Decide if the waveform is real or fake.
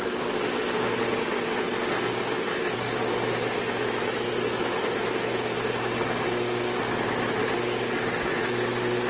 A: real